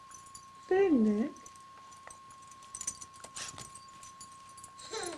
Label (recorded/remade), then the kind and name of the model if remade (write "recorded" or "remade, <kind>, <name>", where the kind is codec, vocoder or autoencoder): remade, vocoder, BigVGAN v2